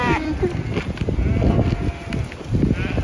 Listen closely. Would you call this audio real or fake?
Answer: real